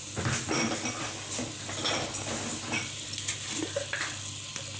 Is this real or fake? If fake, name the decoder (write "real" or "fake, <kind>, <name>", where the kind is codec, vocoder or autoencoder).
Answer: real